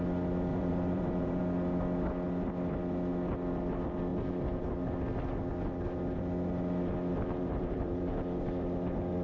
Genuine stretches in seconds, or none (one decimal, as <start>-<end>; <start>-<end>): 0.0-0.5; 1.4-4.1; 4.7-7.1; 8.1-9.2

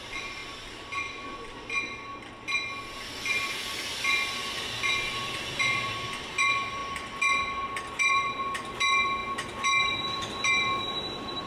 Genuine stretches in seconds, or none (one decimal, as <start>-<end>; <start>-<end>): 0.4-5.2; 6.8-7.9; 9.2-10.4

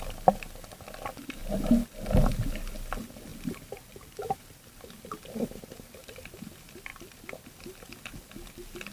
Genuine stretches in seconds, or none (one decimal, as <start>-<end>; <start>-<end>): 0.0-3.3; 6.0-6.9; 7.5-8.9

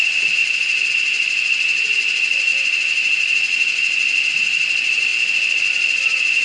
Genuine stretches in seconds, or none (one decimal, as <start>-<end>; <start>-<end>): 2.5-4.3; 5.1-6.0

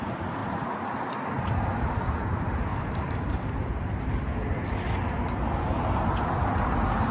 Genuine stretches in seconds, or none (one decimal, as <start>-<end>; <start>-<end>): 0.0-2.7; 4.1-7.1

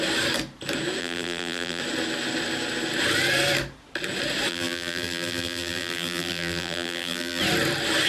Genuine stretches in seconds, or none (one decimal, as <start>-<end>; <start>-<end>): 0.0-1.0; 1.8-4.5; 7.4-8.1

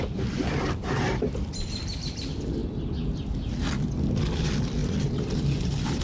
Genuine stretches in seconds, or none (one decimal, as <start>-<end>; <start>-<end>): 2.6-4.2

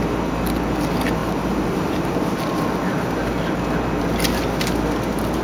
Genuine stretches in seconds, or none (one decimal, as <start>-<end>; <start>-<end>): 0.0-1.2; 2.2-5.4